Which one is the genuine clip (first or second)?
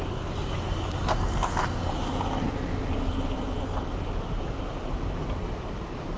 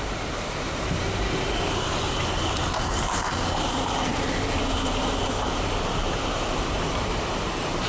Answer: first